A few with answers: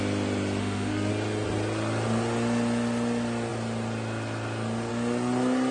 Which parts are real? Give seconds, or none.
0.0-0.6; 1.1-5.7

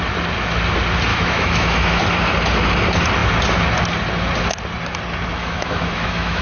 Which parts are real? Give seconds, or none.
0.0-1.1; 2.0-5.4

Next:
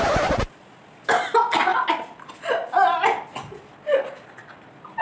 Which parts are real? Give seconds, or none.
0.0-5.0

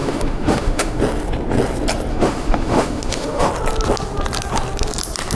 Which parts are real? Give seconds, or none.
1.0-2.1; 3.5-5.4

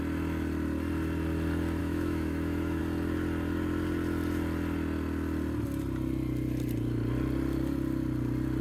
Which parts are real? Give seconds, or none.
0.0-1.8; 2.8-8.6

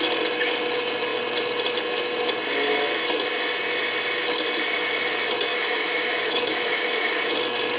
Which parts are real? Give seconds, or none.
0.0-5.5; 7.2-7.8

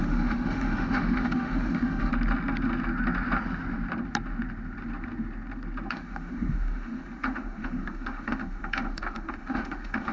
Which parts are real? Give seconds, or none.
2.1-5.9